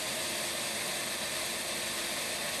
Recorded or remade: recorded